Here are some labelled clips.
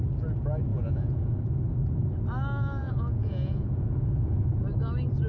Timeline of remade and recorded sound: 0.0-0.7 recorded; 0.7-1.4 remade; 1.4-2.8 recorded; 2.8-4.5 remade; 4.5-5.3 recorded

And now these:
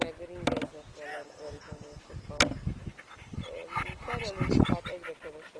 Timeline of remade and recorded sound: 0.0-1.1 recorded; 1.1-2.0 remade; 2.0-5.6 recorded

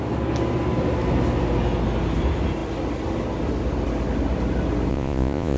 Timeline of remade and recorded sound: 0.0-4.9 recorded; 4.9-5.6 remade